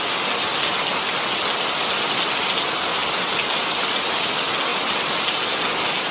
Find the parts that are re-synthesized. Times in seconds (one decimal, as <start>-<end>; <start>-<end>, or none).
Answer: none

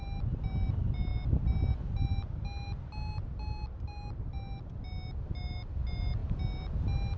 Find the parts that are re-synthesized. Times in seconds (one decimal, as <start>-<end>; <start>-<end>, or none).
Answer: none

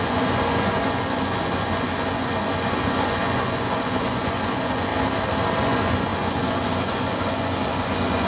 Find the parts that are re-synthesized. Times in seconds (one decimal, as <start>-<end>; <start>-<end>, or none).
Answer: 0.0-4.9; 5.6-8.3

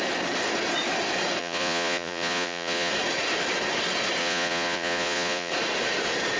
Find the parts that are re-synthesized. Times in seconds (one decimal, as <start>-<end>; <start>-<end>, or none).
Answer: 1.4-2.9; 4.2-5.5

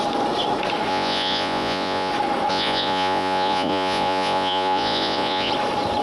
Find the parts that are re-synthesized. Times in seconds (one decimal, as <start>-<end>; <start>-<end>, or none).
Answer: 0.9-2.1; 2.5-5.5

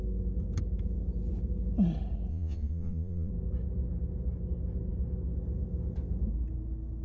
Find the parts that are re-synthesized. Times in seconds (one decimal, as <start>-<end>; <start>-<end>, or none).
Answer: 2.3-3.3

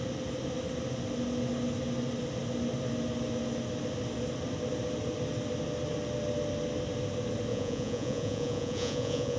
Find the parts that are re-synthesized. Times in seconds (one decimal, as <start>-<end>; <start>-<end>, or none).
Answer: 7.5-9.4